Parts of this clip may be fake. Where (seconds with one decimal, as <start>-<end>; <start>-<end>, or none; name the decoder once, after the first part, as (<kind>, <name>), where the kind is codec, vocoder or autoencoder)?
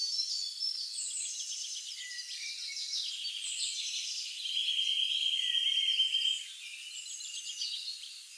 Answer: none